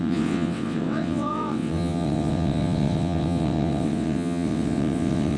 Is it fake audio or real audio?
fake